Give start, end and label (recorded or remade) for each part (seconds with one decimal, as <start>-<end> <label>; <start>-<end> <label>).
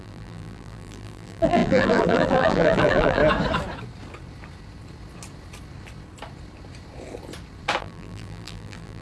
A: 0.0-3.2 remade; 3.2-7.8 recorded; 7.8-9.0 remade